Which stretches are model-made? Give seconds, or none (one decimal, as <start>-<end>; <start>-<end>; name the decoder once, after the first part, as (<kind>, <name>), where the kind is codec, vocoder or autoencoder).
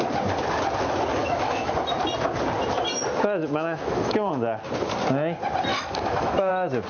1.2-1.7 (autoencoder, DAC-VAE); 3.4-4.3; 5.7-6.5